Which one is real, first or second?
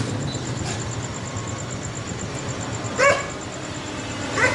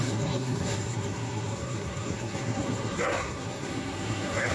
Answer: first